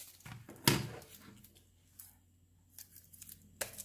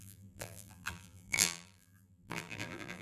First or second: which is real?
first